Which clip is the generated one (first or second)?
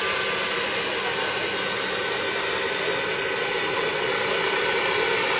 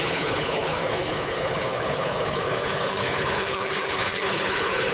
second